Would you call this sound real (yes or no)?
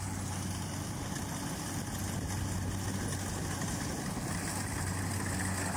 yes